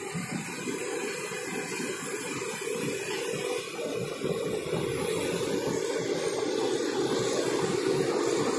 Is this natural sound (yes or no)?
yes